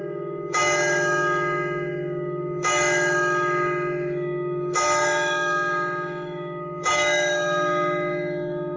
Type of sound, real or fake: fake